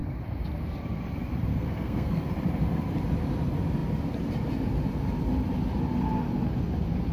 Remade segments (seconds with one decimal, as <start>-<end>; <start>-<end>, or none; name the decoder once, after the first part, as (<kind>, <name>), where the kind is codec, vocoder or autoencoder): 1.5-2.2 (codec, SNAC)